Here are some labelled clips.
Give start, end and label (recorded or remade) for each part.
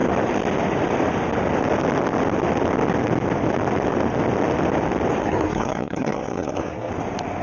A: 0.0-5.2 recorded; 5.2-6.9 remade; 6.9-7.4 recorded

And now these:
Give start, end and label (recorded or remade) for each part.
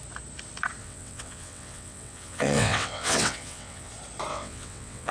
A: 0.0-0.8 recorded; 0.8-3.9 remade; 3.9-4.3 recorded; 4.3-5.1 remade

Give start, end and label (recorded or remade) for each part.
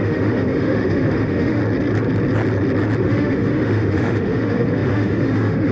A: 0.0-1.6 remade; 1.6-3.0 recorded; 3.0-5.7 remade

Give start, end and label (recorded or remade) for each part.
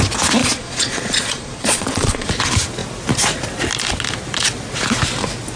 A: 0.0-0.4 recorded; 0.4-2.3 remade; 2.3-5.6 recorded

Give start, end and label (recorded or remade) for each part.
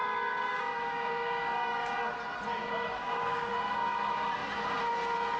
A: 0.0-2.0 remade; 2.0-2.6 recorded; 2.6-3.5 remade; 3.5-5.4 recorded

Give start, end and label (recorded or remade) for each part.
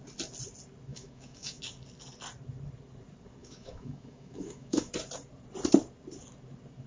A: 0.0-0.9 recorded; 0.9-1.6 remade; 1.6-3.4 recorded; 3.4-4.9 remade; 4.9-6.9 recorded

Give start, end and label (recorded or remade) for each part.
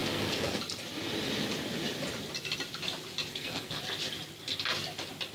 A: 0.0-0.6 remade; 0.6-3.3 recorded; 3.3-3.8 remade; 3.8-5.3 recorded